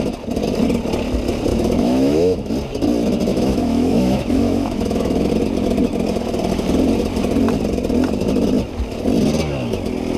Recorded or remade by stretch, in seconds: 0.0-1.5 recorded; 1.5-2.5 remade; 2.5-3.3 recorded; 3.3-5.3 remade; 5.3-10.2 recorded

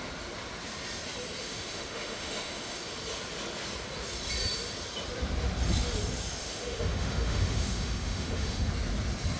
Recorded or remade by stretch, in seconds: 0.0-1.4 recorded; 1.4-2.8 remade; 2.8-6.4 recorded; 6.4-8.7 remade; 8.7-9.4 recorded

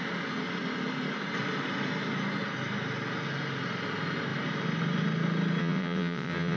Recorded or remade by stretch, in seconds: 0.0-5.6 recorded; 5.6-6.6 remade

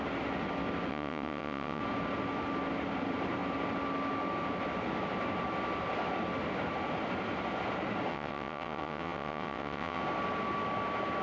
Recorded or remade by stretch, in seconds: 0.0-0.9 recorded; 0.9-1.8 remade; 1.8-8.1 recorded; 8.1-10.0 remade; 10.0-11.2 recorded

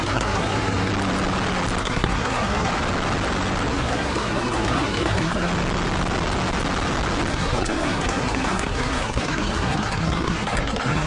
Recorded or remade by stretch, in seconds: 0.0-0.9 remade; 0.9-1.8 recorded; 1.8-2.7 remade; 2.7-3.7 recorded; 3.7-5.5 remade; 5.5-7.3 recorded; 7.3-11.1 remade

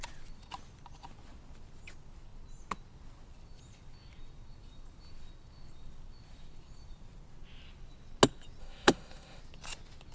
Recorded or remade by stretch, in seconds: 0.0-8.6 recorded; 8.6-9.4 remade; 9.4-10.1 recorded

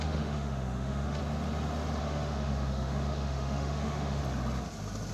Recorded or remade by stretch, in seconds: 0.0-1.2 remade; 1.2-2.0 recorded; 2.0-4.2 remade; 4.2-5.1 recorded